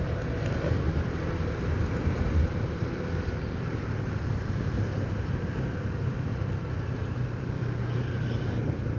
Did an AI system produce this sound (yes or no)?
yes